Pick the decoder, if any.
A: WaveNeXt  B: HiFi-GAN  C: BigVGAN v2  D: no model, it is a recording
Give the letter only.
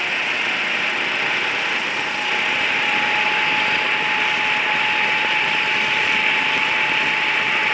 D